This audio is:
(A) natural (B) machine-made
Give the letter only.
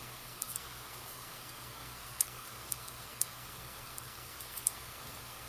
B